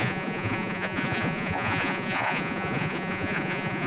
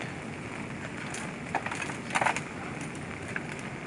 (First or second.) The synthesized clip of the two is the first